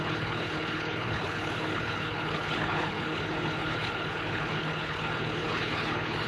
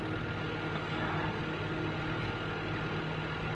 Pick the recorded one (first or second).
second